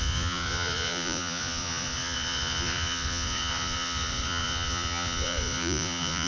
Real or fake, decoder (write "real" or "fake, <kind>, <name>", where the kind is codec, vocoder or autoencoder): fake, vocoder, Vocos